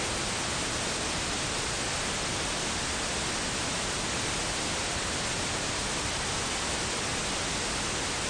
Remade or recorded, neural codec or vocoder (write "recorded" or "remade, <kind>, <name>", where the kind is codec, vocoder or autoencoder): recorded